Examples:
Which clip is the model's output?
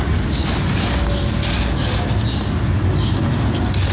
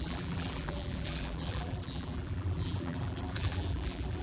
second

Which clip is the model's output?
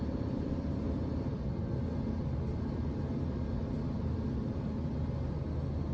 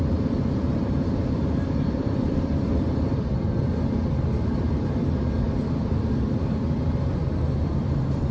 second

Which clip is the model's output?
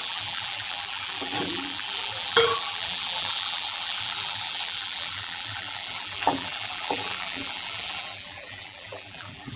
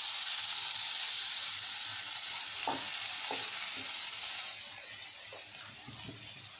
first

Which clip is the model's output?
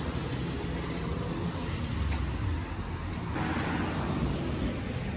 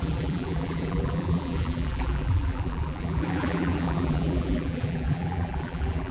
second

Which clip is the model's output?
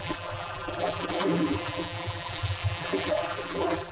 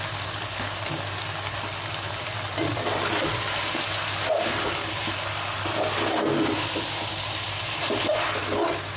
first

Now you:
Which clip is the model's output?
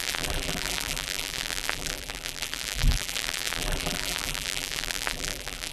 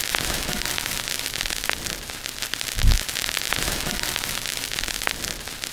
first